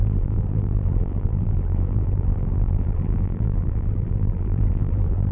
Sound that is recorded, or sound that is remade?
remade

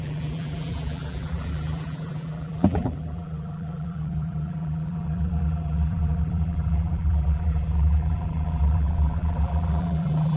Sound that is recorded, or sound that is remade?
remade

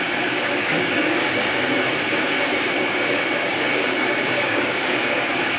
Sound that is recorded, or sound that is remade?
remade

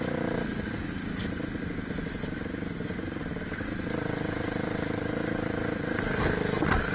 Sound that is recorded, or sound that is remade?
recorded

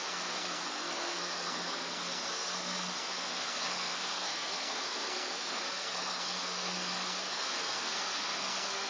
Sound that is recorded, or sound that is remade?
remade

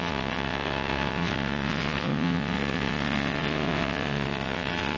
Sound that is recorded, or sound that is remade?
remade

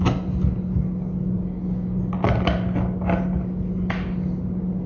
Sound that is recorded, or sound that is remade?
recorded